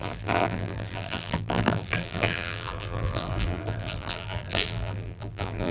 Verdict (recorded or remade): remade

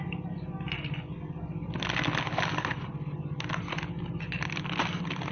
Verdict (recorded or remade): recorded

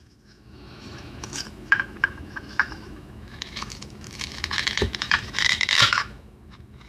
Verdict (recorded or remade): remade